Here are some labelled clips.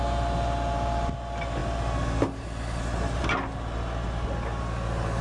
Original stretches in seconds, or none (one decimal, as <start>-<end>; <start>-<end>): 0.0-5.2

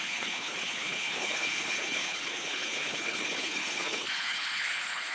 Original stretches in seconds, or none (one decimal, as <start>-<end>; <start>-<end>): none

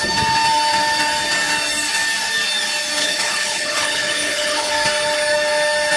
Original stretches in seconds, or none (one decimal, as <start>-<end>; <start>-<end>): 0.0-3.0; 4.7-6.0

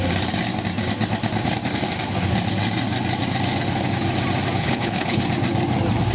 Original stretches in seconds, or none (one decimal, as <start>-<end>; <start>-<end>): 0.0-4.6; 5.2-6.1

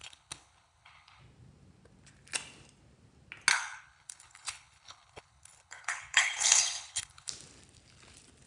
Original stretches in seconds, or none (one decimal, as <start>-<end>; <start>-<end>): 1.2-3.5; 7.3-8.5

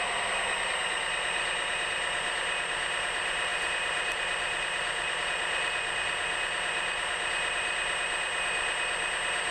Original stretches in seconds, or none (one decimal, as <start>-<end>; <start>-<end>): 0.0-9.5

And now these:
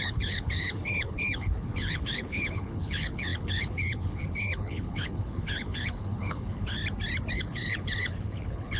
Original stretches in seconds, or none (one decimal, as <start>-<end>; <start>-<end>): 6.8-7.3

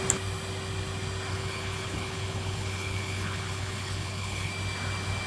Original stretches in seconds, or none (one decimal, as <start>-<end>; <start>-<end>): 0.0-1.3; 4.5-5.3